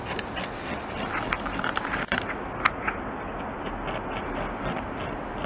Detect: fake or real real